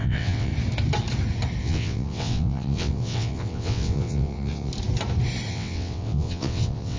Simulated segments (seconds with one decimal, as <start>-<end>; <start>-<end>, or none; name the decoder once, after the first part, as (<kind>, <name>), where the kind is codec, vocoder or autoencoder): 0.0-0.5 (vocoder, WaveNeXt); 1.6-4.7; 5.5-7.0